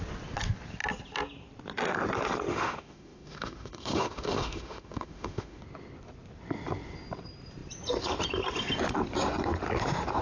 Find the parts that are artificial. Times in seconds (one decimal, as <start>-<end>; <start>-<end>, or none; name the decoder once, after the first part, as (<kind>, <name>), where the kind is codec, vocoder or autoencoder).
2.5-5.6 (autoencoder, DAC-VAE)